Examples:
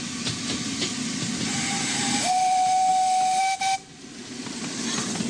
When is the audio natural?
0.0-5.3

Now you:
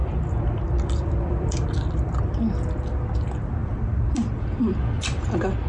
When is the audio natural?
2.2-3.6; 5.3-5.7

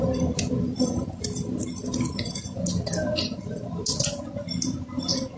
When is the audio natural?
0.0-5.4

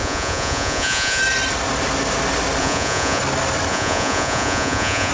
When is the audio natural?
1.2-2.6; 3.2-3.7